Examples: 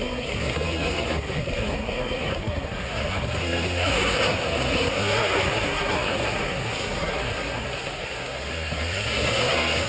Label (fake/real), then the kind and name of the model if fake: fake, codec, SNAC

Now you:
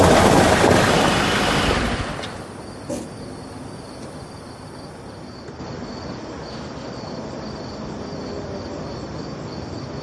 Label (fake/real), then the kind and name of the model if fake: real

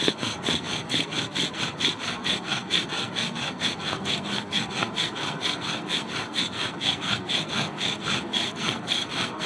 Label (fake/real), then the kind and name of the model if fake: fake, codec, SNAC